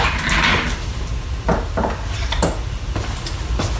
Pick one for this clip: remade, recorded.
recorded